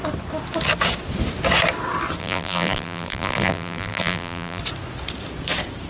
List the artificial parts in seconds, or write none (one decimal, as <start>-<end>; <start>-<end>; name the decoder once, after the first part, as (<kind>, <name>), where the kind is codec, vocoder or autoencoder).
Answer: 2.2-4.6 (vocoder, BigVGAN v2)

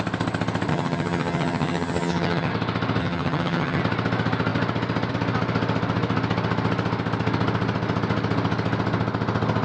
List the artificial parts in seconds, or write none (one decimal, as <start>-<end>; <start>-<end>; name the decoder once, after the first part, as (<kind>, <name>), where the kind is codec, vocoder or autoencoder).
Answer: 0.7-2.5 (vocoder, HiFi-GAN); 3.0-3.8

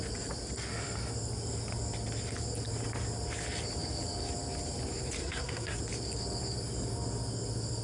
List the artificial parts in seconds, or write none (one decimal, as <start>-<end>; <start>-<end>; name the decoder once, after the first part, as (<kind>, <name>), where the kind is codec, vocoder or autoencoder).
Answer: 5.2-5.8 (codec, SNAC)

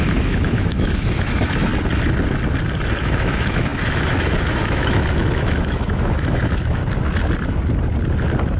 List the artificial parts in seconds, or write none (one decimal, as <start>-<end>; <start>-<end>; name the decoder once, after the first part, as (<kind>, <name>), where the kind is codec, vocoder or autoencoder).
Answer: 0.0-1.7 (autoencoder, DAC-VAE); 3.0-6.8

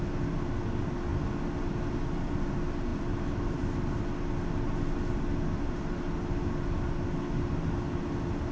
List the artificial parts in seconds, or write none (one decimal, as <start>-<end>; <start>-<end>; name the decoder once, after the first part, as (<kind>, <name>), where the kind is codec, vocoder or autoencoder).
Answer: none

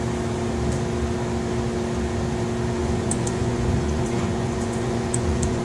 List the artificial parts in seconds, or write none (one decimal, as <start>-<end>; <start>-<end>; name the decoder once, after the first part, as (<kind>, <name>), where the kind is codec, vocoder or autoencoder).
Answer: 2.8-5.6 (vocoder, Vocos)